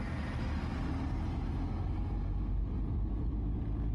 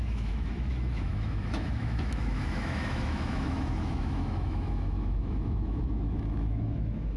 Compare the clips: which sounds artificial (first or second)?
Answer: second